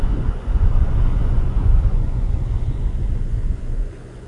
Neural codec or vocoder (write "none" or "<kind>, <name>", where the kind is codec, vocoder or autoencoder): vocoder, Vocos